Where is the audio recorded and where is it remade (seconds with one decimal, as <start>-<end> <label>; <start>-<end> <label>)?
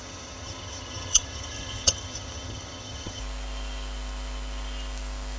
0.0-3.2 remade; 3.2-5.4 recorded